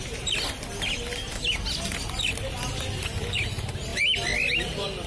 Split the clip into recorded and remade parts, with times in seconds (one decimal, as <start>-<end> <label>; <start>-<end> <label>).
0.0-5.1 recorded